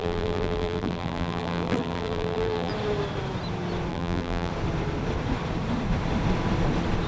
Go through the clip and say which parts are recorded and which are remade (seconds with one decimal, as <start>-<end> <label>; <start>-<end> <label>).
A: 0.0-2.7 remade; 2.7-3.9 recorded; 3.9-4.5 remade; 4.5-7.1 recorded